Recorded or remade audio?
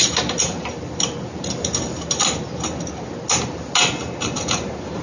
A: recorded